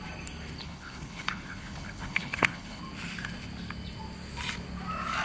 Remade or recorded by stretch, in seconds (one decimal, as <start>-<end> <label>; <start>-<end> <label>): 0.0-0.6 recorded; 0.6-2.8 remade; 2.8-5.2 recorded

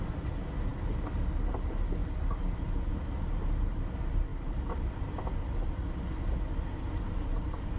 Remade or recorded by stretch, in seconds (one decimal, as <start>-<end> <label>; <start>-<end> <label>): 0.0-7.8 recorded

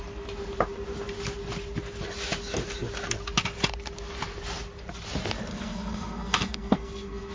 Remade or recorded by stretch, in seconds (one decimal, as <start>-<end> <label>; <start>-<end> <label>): 0.0-5.5 recorded; 5.5-7.3 remade

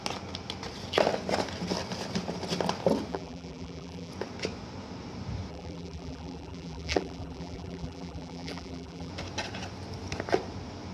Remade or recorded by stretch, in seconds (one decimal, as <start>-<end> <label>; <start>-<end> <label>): 0.0-3.1 recorded; 3.1-4.1 remade; 4.1-5.5 recorded; 5.5-9.1 remade; 9.1-10.9 recorded

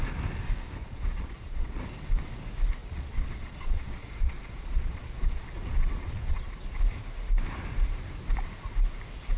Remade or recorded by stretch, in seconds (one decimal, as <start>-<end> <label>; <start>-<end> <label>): 0.0-0.8 recorded; 0.8-1.8 remade; 1.8-2.8 recorded; 2.8-6.8 remade; 6.8-9.4 recorded

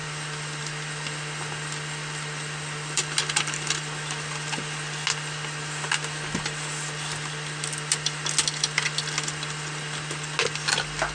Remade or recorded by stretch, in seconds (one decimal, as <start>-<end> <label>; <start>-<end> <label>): 0.0-11.1 recorded

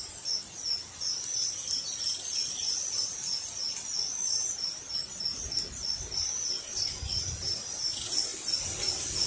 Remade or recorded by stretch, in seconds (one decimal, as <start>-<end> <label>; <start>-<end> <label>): 0.0-9.3 recorded

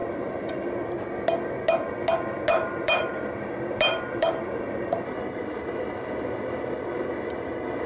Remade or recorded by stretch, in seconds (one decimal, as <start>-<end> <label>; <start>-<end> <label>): 0.0-0.6 remade; 0.6-2.5 recorded; 2.5-5.4 remade; 5.4-7.9 recorded